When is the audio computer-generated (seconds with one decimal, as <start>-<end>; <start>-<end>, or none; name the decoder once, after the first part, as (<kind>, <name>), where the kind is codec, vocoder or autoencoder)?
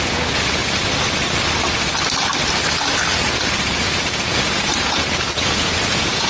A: 0.0-0.6 (vocoder, Vocos); 3.5-6.3